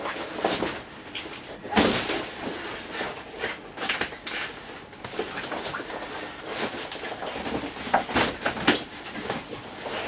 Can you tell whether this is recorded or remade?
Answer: recorded